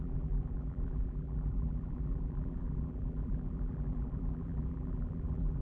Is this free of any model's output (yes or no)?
no